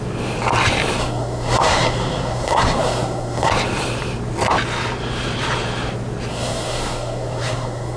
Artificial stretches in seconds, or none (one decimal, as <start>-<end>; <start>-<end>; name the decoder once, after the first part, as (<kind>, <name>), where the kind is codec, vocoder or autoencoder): 1.0-3.5 (codec, SNAC); 6.3-8.0